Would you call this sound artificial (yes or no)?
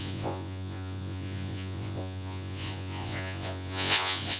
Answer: yes